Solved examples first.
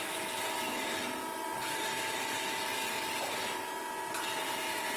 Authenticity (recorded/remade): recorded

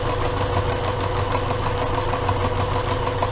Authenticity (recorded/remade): recorded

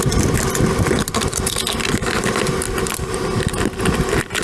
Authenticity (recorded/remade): recorded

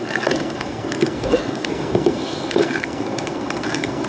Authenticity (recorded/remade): remade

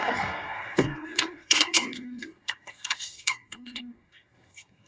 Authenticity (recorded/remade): remade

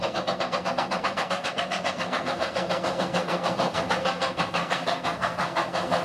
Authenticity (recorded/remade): remade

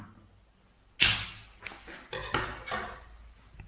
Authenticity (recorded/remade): recorded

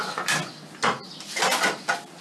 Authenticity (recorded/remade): recorded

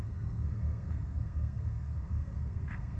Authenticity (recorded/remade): remade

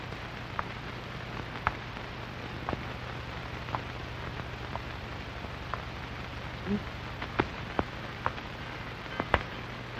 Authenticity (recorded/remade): recorded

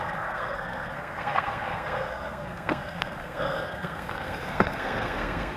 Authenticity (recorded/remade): remade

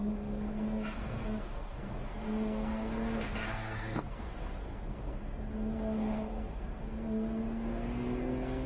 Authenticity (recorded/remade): remade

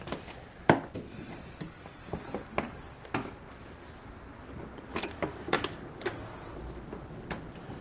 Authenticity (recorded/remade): recorded